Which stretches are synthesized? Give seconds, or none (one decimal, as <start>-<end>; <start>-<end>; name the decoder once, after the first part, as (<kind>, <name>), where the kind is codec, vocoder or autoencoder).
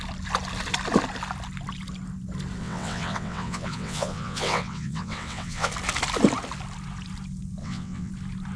2.6-5.7 (vocoder, WaveNeXt); 7.6-8.1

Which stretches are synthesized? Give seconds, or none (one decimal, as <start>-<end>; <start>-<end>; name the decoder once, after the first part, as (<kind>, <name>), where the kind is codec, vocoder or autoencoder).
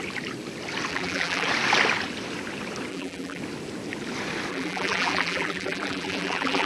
0.9-1.5 (vocoder, BigVGAN v2); 2.9-3.4; 4.5-6.7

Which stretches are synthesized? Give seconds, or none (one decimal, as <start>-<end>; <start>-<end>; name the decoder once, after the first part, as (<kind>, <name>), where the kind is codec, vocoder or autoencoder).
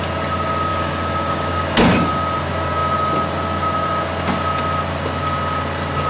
0.7-2.1 (codec, DAC)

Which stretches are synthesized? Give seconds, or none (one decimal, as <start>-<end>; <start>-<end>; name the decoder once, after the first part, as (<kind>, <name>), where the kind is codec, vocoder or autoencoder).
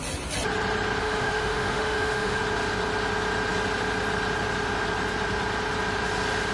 1.0-2.4 (autoencoder, DAC-VAE)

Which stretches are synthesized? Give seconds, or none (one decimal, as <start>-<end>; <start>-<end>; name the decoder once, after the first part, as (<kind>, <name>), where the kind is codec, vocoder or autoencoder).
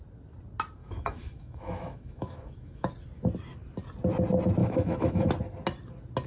0.8-2.9 (autoencoder, DAC-VAE); 4.6-5.3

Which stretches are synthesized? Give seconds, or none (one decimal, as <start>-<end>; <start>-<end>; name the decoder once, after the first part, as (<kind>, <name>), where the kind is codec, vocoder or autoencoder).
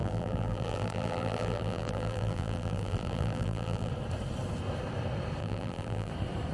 0.0-3.9 (vocoder, BigVGAN v2); 5.4-6.1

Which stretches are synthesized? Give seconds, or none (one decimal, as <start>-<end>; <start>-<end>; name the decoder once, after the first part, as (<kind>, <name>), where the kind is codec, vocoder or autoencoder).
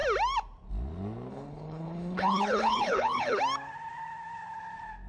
1.3-3.4 (codec, HILCodec)